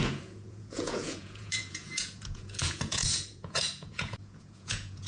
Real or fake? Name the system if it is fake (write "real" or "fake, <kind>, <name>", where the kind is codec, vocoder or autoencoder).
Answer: fake, vocoder, Vocos